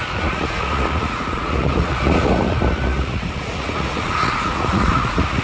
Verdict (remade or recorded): remade